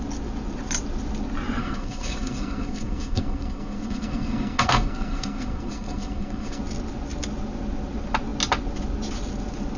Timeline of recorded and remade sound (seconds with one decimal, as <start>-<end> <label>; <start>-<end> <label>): 0.0-1.6 recorded; 1.6-6.6 remade; 6.6-9.8 recorded